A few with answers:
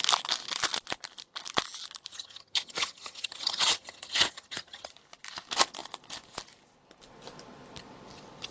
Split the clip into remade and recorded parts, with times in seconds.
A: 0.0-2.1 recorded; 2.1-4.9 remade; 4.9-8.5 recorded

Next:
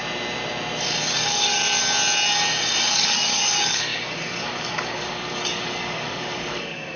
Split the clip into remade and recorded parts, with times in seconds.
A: 0.0-1.0 recorded; 1.0-1.6 remade; 1.6-2.9 recorded; 2.9-7.0 remade